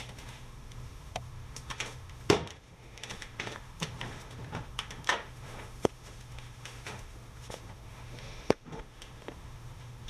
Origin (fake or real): fake